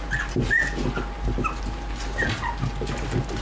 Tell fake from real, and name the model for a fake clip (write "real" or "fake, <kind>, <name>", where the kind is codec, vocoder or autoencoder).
real